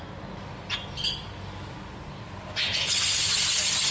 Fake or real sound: real